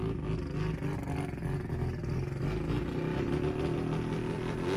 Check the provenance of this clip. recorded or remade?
recorded